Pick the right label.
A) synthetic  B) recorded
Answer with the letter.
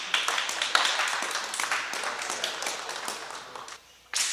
B